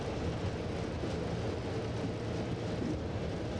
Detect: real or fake real